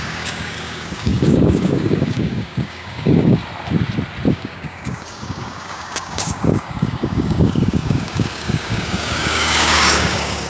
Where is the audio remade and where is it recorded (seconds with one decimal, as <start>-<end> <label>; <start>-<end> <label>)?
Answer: 0.0-3.4 remade; 3.4-4.3 recorded; 4.3-10.5 remade